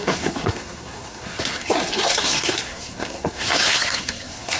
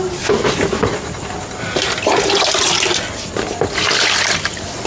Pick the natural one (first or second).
second